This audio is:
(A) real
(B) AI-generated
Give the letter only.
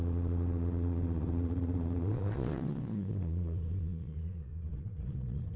B